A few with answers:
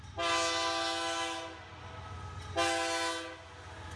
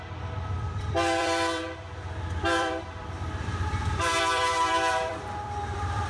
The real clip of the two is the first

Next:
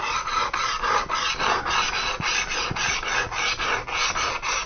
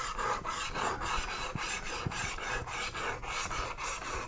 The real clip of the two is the first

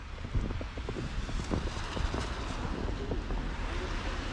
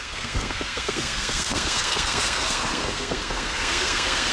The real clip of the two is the first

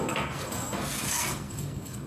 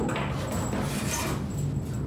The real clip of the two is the second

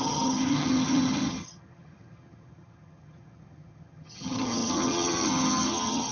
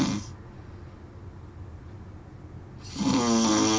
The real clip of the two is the second